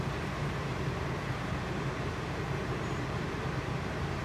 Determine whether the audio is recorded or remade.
remade